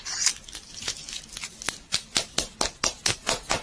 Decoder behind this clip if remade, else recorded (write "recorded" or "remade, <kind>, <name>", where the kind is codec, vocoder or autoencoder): recorded